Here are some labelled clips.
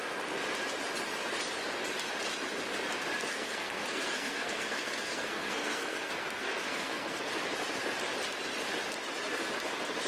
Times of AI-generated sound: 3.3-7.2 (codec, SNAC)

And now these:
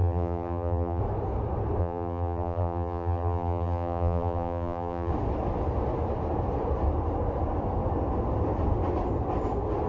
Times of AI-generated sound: 0.0-1.0 (vocoder, BigVGAN v2); 1.8-5.1